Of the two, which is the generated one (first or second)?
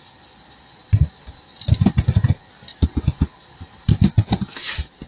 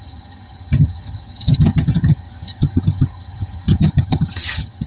second